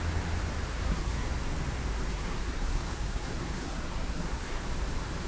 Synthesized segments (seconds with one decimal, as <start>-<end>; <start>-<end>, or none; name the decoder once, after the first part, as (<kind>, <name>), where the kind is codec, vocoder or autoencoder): 0.7-1.3 (codec, SNAC); 2.1-4.6